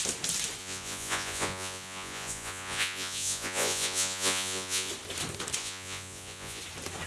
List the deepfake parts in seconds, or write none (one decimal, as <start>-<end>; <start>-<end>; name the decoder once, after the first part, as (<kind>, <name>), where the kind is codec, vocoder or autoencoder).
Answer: 0.6-4.9 (vocoder, Vocos); 5.6-6.6